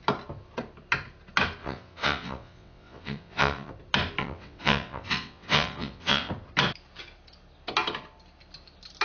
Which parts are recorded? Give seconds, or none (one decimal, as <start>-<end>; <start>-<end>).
0.0-1.6; 3.7-4.2; 6.3-9.0